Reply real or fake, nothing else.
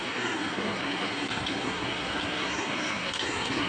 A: fake